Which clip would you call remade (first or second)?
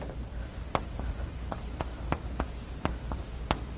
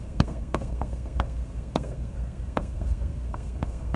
second